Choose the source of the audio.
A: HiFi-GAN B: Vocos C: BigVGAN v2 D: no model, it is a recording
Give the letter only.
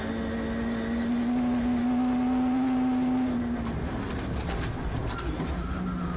D